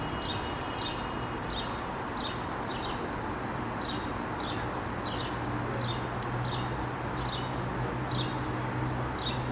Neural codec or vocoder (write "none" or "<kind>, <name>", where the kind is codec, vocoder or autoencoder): none